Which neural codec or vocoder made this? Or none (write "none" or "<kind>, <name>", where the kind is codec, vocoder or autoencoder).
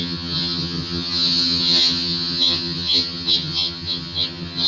vocoder, HiFi-GAN